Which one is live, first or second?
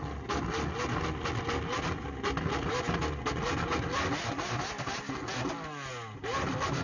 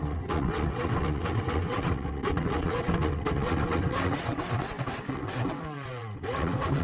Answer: first